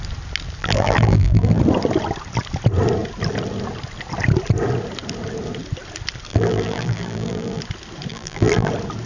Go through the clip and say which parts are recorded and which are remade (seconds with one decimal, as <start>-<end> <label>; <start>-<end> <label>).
0.0-0.6 recorded; 0.6-1.6 remade; 1.6-6.3 recorded; 6.3-7.6 remade; 7.6-8.1 recorded; 8.1-8.7 remade; 8.7-9.1 recorded